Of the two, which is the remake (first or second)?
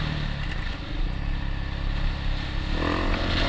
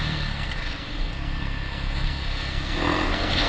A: second